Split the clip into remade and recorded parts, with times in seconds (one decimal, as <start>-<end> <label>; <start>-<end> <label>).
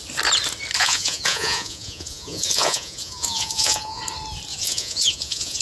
0.0-0.8 recorded; 0.8-4.0 remade; 4.0-4.5 recorded; 4.5-5.6 remade